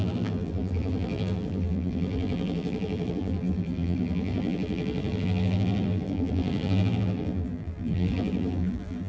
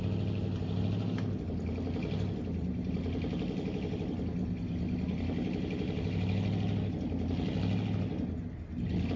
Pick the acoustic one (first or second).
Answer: second